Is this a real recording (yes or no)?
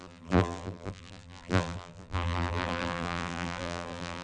no